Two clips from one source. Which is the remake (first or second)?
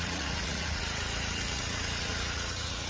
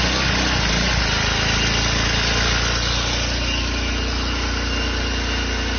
first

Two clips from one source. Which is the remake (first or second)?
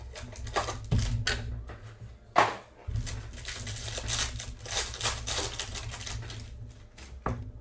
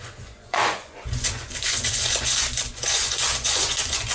second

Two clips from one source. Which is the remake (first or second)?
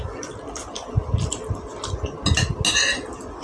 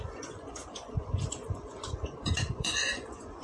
second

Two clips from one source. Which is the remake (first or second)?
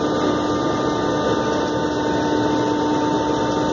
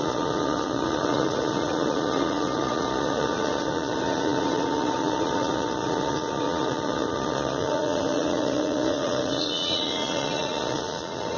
second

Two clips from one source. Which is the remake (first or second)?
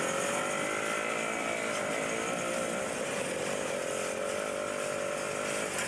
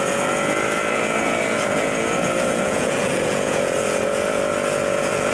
second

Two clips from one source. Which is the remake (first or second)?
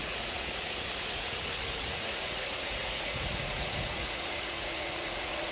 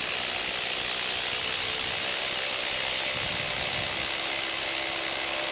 first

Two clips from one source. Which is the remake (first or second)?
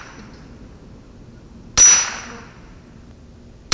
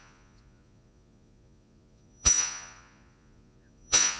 second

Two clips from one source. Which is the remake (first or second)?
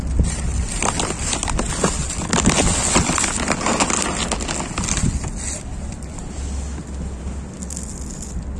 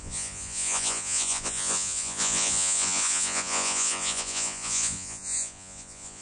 second